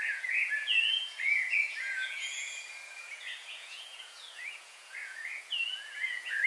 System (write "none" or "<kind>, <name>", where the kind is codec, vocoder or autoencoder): vocoder, Vocos